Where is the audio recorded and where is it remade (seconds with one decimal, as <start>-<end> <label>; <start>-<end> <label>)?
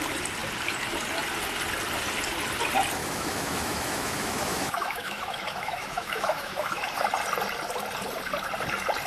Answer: 0.0-3.0 recorded; 3.0-6.8 remade; 6.8-9.1 recorded